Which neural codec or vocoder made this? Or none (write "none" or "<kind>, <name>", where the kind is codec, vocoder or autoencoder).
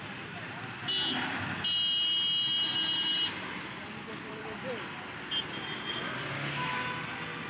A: none